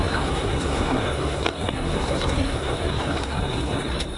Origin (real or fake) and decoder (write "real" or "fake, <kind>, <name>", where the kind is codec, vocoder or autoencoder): fake, codec, SNAC